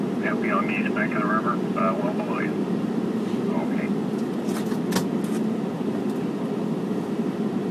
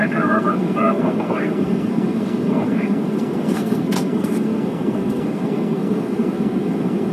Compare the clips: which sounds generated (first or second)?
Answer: second